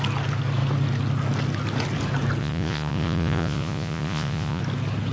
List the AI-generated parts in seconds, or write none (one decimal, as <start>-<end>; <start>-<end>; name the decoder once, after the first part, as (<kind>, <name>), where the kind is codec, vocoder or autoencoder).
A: 2.4-4.6 (vocoder, Vocos)